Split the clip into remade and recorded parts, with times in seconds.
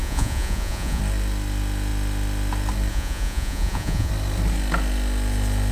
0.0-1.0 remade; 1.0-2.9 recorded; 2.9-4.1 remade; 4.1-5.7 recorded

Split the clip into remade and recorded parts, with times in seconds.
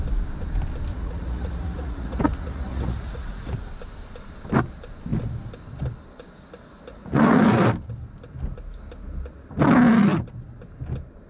0.0-0.9 recorded; 0.9-3.6 remade; 3.6-6.9 recorded; 6.9-7.4 remade; 7.4-11.3 recorded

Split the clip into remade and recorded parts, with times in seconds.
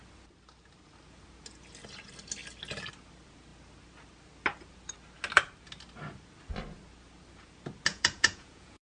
0.0-7.9 recorded; 7.9-8.9 remade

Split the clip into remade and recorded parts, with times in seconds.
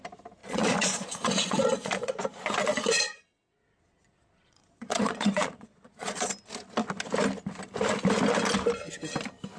0.0-0.4 recorded; 0.4-2.2 remade; 2.2-2.9 recorded; 2.9-6.3 remade; 6.3-9.6 recorded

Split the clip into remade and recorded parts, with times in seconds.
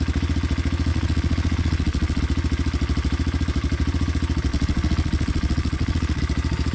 0.0-0.9 recorded; 0.9-2.2 remade; 2.2-4.5 recorded; 4.5-6.2 remade; 6.2-6.7 recorded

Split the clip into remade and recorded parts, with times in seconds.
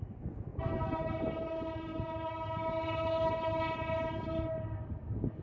0.0-5.4 recorded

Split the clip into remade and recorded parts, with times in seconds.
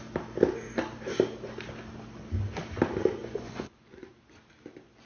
0.0-3.2 recorded; 3.2-4.1 remade; 4.1-5.1 recorded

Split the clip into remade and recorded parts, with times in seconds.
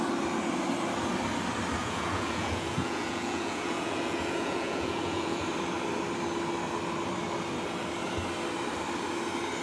0.0-1.8 recorded; 1.8-5.4 remade; 5.4-9.6 recorded